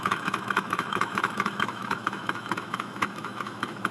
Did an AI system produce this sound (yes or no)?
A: yes